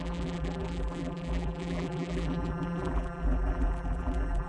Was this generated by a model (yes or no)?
yes